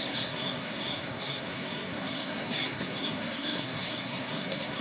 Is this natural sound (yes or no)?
no